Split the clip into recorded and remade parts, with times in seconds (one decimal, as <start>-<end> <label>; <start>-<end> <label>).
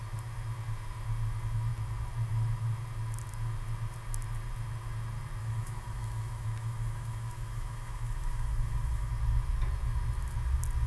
0.0-5.4 recorded; 5.4-9.1 remade; 9.1-10.9 recorded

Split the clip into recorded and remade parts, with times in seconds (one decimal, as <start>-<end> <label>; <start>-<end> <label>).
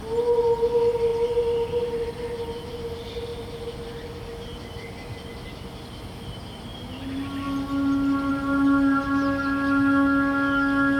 0.0-11.0 recorded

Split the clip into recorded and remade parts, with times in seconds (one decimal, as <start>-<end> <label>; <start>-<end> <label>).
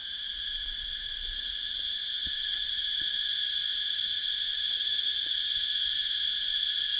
0.0-7.0 remade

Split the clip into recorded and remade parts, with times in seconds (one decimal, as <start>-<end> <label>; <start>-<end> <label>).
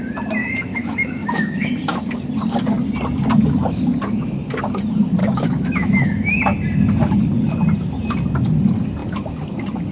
0.0-0.4 recorded; 0.4-1.7 remade; 1.7-5.2 recorded; 5.2-6.4 remade; 6.4-9.9 recorded